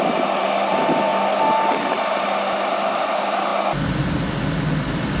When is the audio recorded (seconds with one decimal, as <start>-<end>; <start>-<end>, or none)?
0.0-5.2